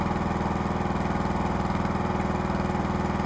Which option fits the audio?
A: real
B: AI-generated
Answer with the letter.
A